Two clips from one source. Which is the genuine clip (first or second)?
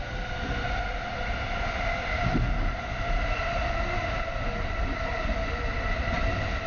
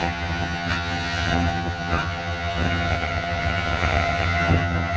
first